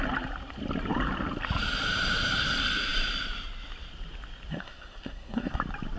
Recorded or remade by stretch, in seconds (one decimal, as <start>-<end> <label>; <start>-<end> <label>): 0.0-4.5 recorded; 4.5-5.6 remade; 5.6-6.0 recorded

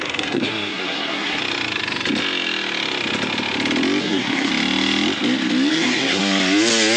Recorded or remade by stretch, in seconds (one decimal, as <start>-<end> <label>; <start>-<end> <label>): 0.0-1.4 remade; 1.4-4.0 recorded; 4.0-4.5 remade; 4.5-5.7 recorded; 5.7-6.2 remade; 6.2-7.0 recorded

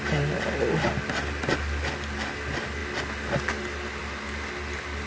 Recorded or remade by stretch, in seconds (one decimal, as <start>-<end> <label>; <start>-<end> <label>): 0.0-5.1 recorded

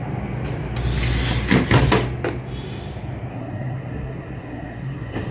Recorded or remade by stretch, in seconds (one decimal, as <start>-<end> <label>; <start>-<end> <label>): 0.0-3.3 recorded; 3.3-5.3 remade

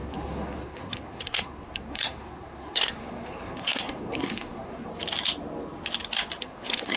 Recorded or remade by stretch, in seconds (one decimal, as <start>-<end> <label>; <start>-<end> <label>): 0.0-4.9 remade; 4.9-6.4 recorded; 6.4-7.0 remade